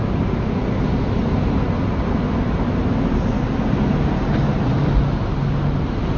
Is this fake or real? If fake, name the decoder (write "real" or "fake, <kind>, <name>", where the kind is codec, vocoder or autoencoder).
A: real